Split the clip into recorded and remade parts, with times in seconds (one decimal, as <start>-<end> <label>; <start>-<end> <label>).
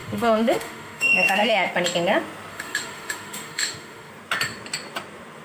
0.0-1.7 remade; 1.7-2.5 recorded; 2.5-4.1 remade; 4.1-5.4 recorded